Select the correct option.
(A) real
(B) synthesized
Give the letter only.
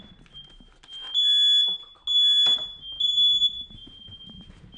A